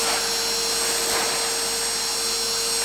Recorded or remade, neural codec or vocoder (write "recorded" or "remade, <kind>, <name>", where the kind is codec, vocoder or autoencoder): recorded